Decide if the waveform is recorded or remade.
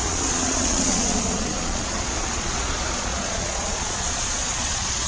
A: remade